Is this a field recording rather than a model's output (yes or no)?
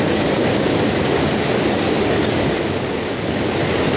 no